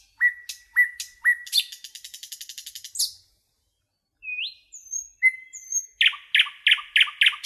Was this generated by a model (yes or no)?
no